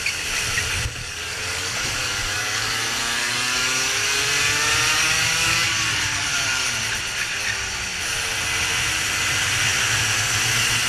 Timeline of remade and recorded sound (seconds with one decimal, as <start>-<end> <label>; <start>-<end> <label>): 0.0-1.0 recorded; 1.0-4.2 remade; 4.2-4.9 recorded; 4.9-6.7 remade; 6.7-10.9 recorded